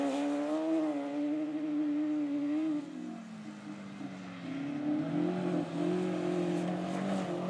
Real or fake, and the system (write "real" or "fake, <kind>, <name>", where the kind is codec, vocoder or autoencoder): real